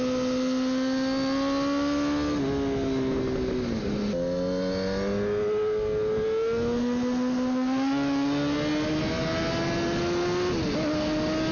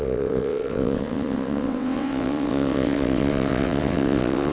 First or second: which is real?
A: first